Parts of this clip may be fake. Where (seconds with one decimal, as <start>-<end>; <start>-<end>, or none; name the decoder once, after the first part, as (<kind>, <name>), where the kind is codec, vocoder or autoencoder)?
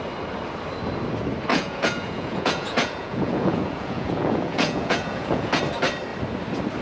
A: 1.5-5.6 (vocoder, Vocos)